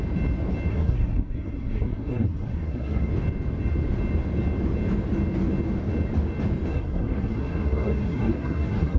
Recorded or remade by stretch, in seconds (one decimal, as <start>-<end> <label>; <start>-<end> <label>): 0.0-0.7 recorded; 0.7-3.1 remade; 3.1-6.7 recorded; 6.7-9.0 remade